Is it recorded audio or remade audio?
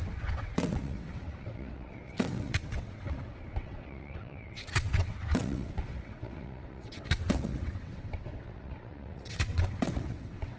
remade